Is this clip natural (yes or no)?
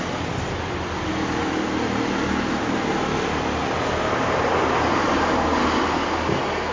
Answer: yes